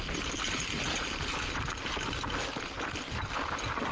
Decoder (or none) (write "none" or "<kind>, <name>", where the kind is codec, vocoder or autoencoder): none